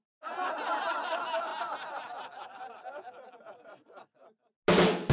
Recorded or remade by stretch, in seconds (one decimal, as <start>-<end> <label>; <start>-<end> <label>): 0.0-5.1 recorded